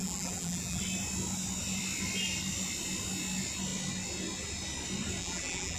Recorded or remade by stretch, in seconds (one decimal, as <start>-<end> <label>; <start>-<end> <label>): 0.0-0.8 remade; 0.8-5.2 recorded; 5.2-5.8 remade